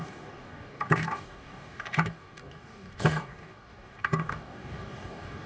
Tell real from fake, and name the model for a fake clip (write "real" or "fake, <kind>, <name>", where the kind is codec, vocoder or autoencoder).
fake, codec, DAC